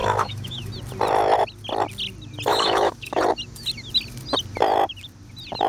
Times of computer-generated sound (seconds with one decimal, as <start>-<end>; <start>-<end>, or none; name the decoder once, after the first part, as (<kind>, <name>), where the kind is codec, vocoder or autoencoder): 0.0-0.7 (autoencoder, DAC-VAE); 2.5-3.2